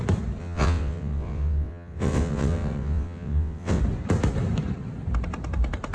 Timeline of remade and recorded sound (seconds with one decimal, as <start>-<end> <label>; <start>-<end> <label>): 0.0-0.4 recorded; 0.4-3.8 remade; 3.8-5.9 recorded